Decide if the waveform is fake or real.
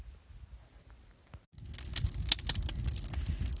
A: real